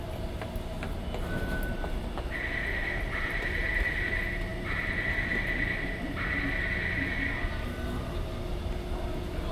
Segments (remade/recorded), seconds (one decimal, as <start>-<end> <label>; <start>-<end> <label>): 0.0-9.5 recorded